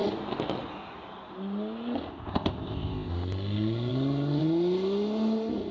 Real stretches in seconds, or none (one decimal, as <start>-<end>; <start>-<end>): 0.0-2.1; 3.1-5.7